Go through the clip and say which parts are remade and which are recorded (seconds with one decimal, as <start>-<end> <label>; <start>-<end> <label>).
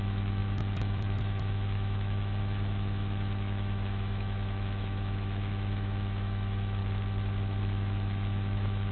0.0-6.8 remade; 6.8-7.6 recorded; 7.6-8.9 remade